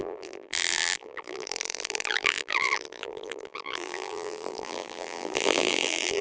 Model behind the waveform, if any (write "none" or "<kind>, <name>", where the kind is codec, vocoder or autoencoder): vocoder, BigVGAN v2